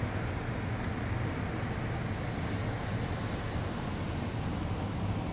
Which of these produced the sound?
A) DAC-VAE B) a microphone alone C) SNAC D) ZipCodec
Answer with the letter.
B